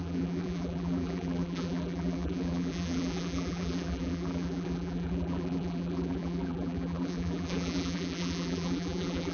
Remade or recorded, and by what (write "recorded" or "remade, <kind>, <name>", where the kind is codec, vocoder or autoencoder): remade, vocoder, BigVGAN v2